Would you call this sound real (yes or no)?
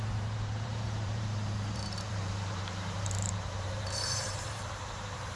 no